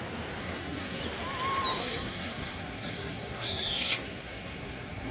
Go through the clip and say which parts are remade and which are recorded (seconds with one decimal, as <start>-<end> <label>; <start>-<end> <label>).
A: 0.0-0.4 recorded; 0.4-1.0 remade; 1.0-1.8 recorded; 1.8-5.1 remade